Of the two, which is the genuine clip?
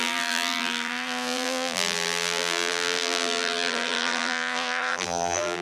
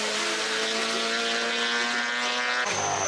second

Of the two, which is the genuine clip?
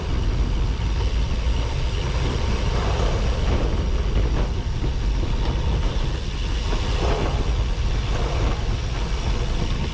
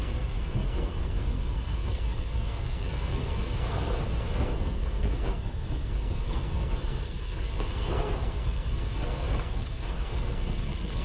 first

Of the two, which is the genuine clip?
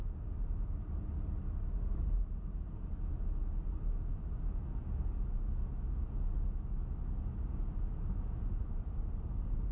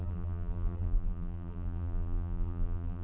first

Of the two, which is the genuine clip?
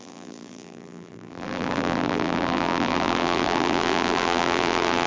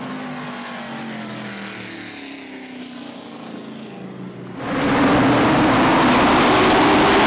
second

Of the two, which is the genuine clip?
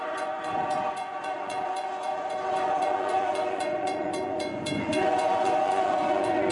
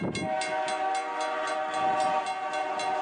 second